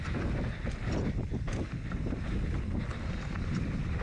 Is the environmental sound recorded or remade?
recorded